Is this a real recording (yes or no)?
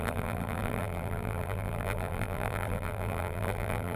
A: no